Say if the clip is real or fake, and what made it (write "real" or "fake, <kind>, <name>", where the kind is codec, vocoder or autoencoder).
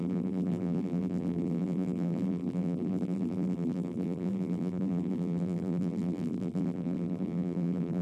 fake, vocoder, BigVGAN v2